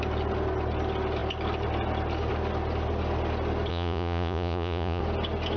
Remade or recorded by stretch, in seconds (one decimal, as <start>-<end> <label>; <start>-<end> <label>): 0.0-3.7 recorded; 3.7-5.0 remade; 5.0-5.6 recorded